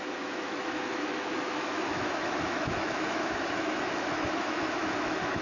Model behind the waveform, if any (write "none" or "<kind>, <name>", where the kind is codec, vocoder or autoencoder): autoencoder, DAC-VAE